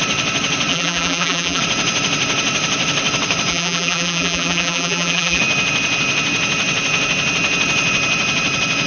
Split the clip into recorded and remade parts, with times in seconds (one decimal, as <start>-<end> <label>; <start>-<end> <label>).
0.0-0.7 recorded; 0.7-1.6 remade; 1.6-3.5 recorded; 3.5-5.4 remade; 5.4-8.9 recorded